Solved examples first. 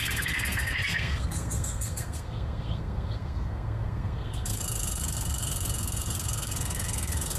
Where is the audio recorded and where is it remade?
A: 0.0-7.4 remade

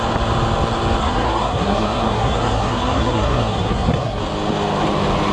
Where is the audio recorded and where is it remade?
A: 0.0-1.0 recorded; 1.0-4.2 remade; 4.2-5.3 recorded

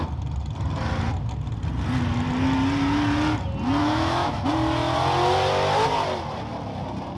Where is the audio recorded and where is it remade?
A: 0.0-3.8 recorded; 3.8-4.4 remade; 4.4-7.2 recorded

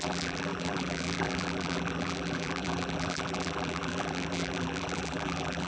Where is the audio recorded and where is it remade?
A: 0.0-5.7 remade

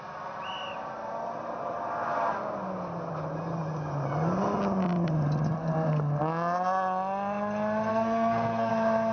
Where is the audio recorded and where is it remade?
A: 0.0-7.9 recorded; 7.9-8.7 remade; 8.7-9.1 recorded

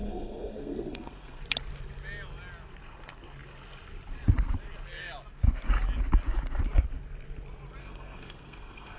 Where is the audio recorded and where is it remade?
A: 0.0-1.4 remade; 1.4-7.8 recorded; 7.8-9.0 remade